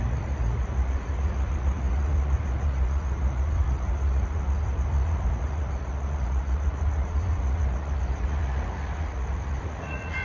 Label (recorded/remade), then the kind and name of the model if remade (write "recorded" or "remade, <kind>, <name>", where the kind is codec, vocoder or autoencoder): remade, vocoder, Vocos